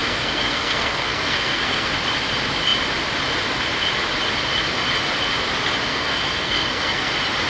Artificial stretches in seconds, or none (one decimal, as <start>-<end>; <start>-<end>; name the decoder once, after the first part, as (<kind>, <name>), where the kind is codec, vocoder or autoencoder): 0.0-1.9 (codec, SNAC); 5.9-7.1